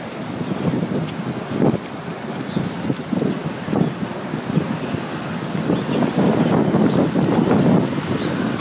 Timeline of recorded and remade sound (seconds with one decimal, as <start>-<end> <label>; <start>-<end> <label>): 0.0-8.6 recorded